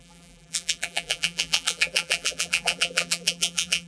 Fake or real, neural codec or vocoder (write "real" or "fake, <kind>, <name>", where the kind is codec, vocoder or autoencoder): fake, vocoder, BigVGAN v2